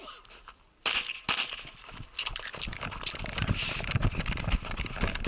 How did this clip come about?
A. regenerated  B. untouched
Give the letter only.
B